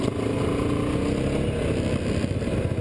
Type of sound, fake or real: real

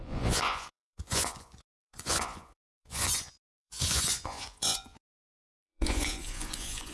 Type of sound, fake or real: fake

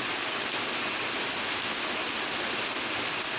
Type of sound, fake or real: real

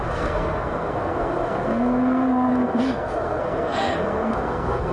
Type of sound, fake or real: fake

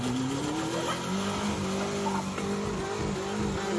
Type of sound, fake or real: real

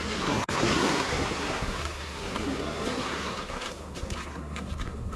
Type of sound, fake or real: fake